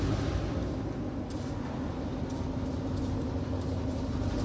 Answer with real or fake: real